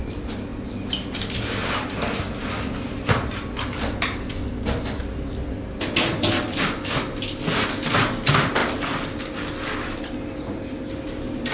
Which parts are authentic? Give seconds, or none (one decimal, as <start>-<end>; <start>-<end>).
0.0-11.5